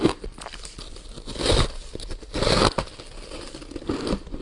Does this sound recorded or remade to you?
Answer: recorded